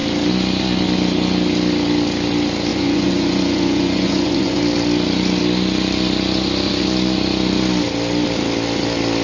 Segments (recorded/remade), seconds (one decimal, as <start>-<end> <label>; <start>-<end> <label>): 0.0-2.7 recorded; 2.7-4.6 remade; 4.6-9.2 recorded